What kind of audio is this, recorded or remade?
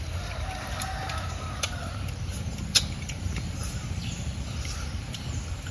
remade